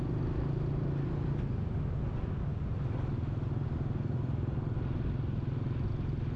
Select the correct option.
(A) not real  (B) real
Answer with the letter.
B